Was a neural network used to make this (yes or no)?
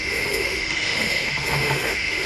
yes